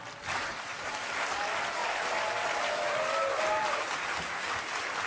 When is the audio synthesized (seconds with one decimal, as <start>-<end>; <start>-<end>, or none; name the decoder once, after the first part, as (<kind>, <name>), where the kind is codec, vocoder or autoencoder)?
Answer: 0.4-0.9 (vocoder, Vocos)